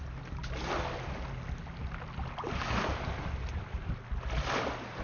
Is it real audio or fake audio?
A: real